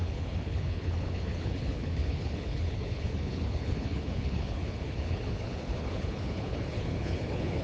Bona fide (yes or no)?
no